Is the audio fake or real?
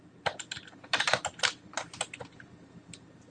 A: real